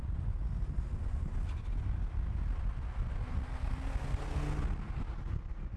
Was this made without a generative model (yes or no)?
yes